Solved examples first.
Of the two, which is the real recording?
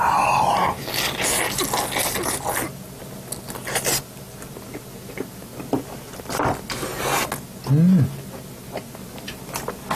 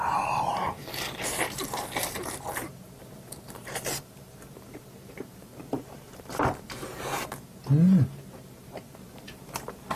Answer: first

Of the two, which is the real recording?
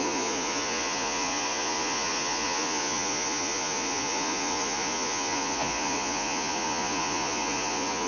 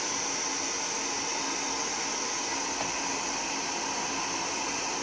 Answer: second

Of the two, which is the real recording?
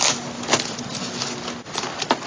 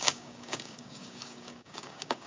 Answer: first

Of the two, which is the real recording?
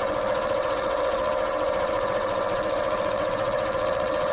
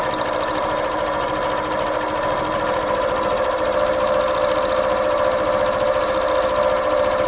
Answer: second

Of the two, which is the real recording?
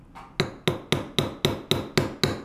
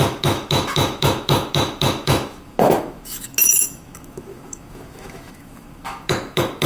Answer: first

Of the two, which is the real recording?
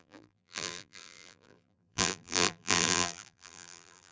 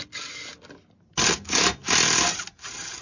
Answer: second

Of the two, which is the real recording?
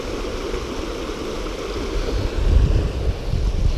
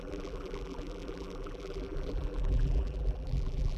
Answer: first